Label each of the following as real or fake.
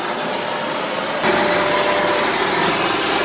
real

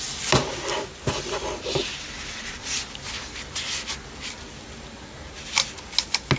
real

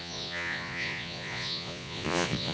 fake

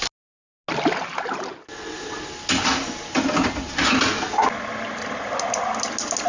real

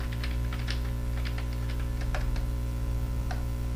real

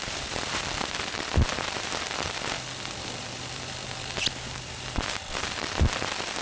fake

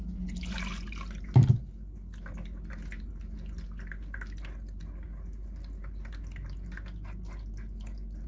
real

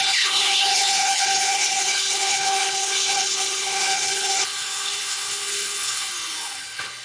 fake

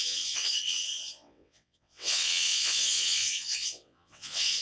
fake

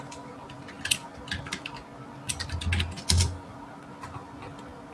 real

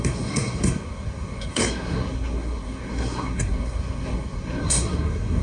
fake